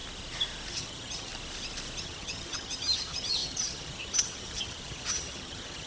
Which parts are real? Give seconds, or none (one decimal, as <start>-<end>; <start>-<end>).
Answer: 0.0-0.7; 1.3-2.0